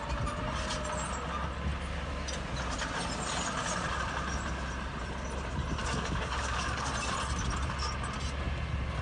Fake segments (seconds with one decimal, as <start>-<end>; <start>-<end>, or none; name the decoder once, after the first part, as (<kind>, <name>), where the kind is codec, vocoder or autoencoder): 5.8-6.9 (codec, DAC)